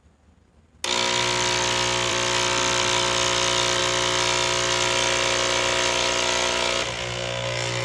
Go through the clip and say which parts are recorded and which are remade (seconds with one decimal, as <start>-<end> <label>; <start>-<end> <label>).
0.0-2.1 recorded; 2.1-3.8 remade; 3.8-7.8 recorded

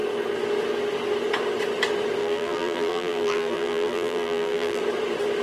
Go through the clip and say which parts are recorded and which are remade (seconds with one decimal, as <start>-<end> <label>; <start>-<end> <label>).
0.0-2.2 recorded; 2.2-4.8 remade; 4.8-5.4 recorded

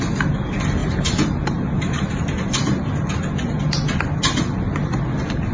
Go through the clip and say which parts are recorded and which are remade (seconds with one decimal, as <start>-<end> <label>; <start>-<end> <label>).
0.0-0.8 recorded; 0.8-2.2 remade; 2.2-5.5 recorded

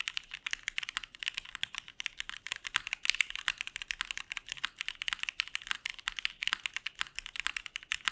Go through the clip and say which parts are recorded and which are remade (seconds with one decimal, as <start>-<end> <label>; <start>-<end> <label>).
0.0-5.9 recorded; 5.9-6.5 remade; 6.5-8.1 recorded

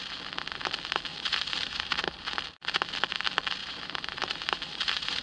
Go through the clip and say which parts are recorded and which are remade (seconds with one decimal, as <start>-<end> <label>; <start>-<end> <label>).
0.0-1.1 recorded; 1.1-1.9 remade; 1.9-3.6 recorded; 3.6-5.2 remade

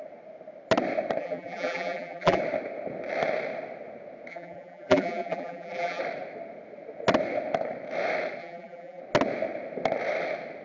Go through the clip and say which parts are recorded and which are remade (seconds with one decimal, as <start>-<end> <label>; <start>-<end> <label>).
0.0-1.2 recorded; 1.2-2.4 remade; 2.4-4.3 recorded; 4.3-6.0 remade; 6.0-8.4 recorded; 8.4-9.0 remade; 9.0-10.6 recorded

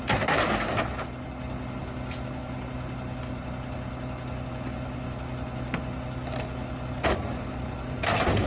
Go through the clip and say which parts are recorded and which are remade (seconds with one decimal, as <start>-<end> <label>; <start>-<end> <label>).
0.0-8.5 recorded